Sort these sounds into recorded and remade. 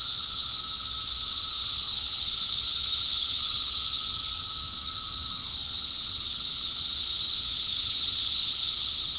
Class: remade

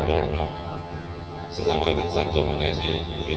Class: remade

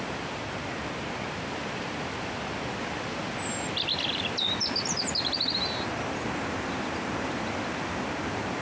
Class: recorded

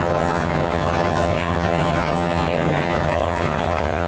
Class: remade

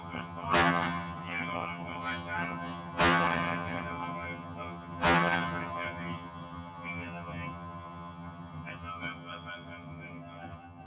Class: remade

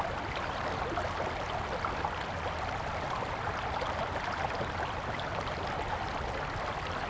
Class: recorded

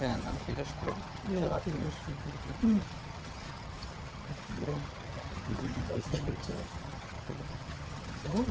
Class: remade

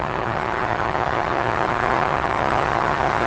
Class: remade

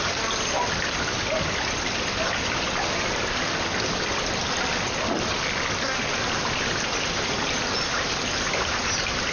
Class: recorded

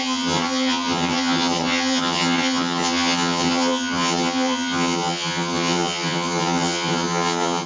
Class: remade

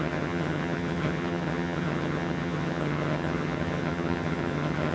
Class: remade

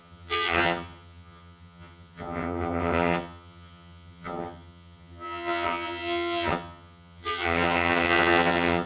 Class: remade